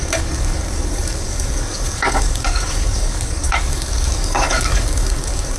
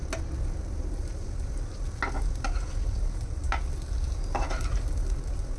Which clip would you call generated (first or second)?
first